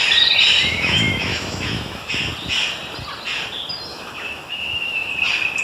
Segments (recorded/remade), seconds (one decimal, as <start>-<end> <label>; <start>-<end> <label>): 0.0-0.7 recorded; 0.7-2.1 remade; 2.1-3.9 recorded; 3.9-5.1 remade; 5.1-5.6 recorded